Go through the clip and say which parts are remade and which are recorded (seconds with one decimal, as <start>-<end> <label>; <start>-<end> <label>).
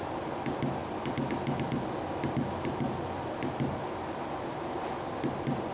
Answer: 0.0-5.7 recorded